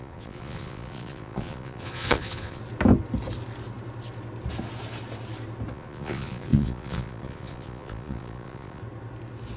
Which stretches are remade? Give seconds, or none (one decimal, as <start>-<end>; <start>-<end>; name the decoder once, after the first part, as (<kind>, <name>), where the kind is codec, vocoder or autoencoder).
0.0-2.6 (vocoder, Vocos); 5.7-8.8